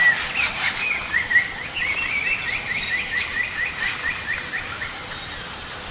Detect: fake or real real